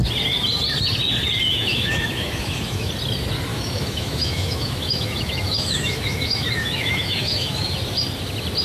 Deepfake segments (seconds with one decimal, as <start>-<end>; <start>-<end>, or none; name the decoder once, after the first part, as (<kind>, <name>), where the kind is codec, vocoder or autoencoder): 1.5-2.9 (autoencoder, DAC-VAE); 3.5-7.7